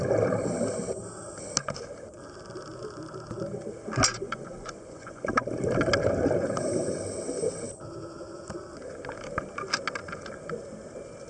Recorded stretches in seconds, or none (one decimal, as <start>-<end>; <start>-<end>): 0.0-4.1; 5.2-11.3